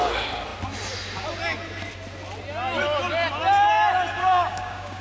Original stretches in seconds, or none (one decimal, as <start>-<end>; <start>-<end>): 0.0-4.2